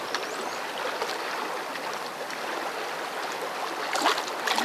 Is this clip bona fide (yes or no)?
yes